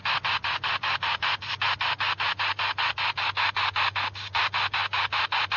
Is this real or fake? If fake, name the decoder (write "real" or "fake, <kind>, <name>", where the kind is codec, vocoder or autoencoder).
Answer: real